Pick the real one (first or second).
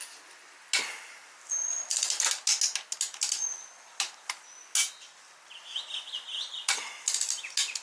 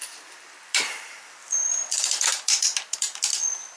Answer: first